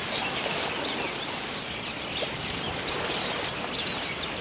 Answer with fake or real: real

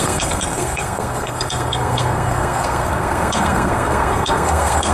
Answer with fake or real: fake